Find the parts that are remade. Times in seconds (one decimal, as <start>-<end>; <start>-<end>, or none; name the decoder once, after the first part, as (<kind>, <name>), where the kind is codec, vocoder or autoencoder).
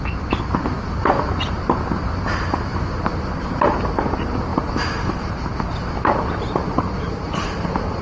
0.0-8.0 (vocoder, BigVGAN v2)